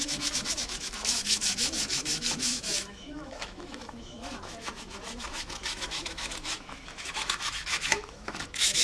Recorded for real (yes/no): no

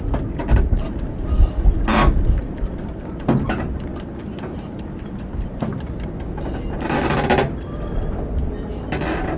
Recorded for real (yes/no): yes